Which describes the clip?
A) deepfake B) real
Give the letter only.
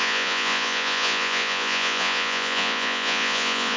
A